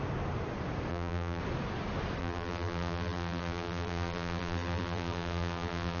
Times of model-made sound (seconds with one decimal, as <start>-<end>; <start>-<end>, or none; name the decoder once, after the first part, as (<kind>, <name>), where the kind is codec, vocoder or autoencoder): 0.9-1.4 (vocoder, BigVGAN v2); 2.2-6.0